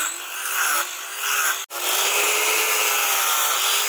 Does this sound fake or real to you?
real